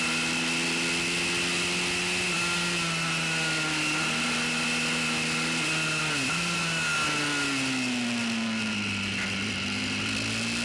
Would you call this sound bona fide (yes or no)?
yes